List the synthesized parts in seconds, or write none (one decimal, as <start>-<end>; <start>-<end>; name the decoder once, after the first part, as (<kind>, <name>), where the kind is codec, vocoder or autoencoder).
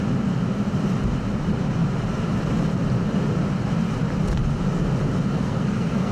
5.3-6.1 (codec, SNAC)